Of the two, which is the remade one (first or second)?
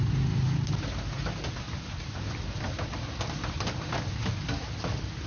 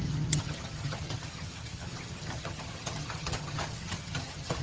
second